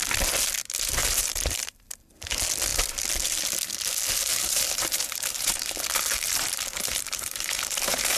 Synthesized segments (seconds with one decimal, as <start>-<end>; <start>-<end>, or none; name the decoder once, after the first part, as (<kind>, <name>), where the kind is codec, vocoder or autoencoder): 1.0-1.8 (vocoder, BigVGAN v2); 4.3-8.2